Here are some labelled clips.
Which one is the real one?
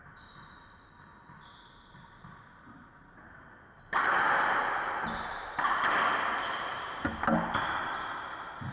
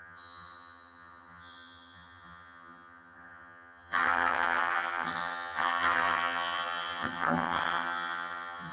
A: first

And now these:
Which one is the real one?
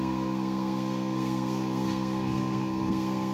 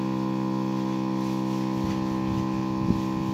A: second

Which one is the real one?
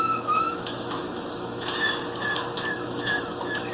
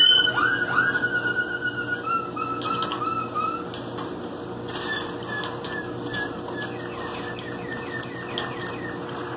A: second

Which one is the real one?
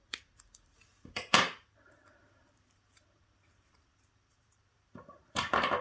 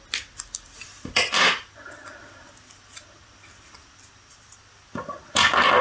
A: second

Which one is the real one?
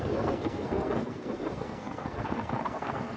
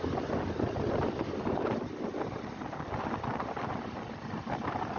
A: second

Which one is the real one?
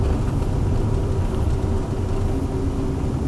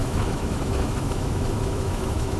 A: first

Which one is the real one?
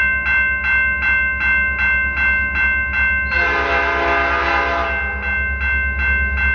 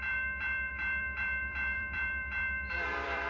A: first